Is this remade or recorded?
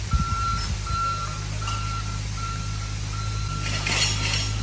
recorded